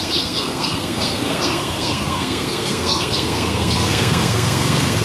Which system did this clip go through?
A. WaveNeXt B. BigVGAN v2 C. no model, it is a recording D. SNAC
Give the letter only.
D